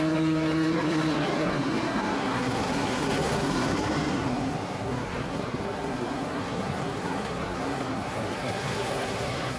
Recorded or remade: remade